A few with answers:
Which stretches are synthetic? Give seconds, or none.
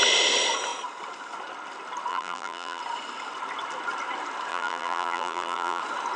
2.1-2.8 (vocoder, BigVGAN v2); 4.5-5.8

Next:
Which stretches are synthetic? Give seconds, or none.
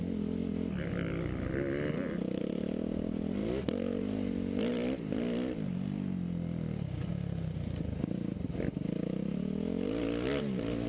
3.4-4.0 (vocoder, BigVGAN v2); 4.7-7.1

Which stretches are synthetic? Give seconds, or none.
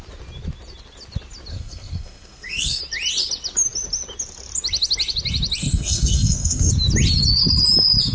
1.5-2.8 (codec, SNAC); 5.6-6.7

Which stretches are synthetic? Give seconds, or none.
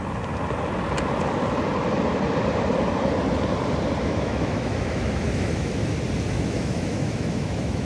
4.0-5.8 (autoencoder, DAC-VAE); 6.3-7.8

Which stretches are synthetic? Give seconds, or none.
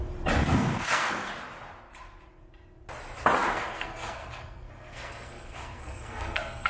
0.4-1.3 (codec, SNAC); 3.4-6.7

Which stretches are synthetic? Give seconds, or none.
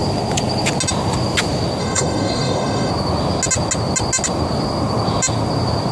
1.8-2.9 (codec, DAC)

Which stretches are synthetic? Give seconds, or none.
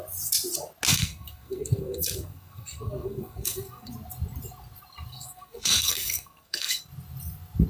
0.9-3.9 (codec, SNAC); 5.1-6.8